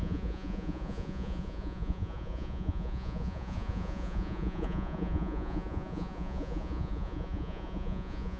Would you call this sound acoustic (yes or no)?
no